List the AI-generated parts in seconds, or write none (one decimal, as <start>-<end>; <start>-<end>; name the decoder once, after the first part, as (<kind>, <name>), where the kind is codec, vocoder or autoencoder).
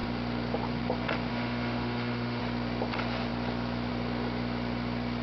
1.3-2.4 (autoencoder, DAC-VAE)